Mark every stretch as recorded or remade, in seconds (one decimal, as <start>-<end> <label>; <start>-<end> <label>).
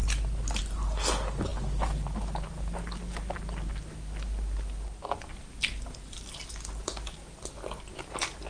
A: 0.0-8.5 recorded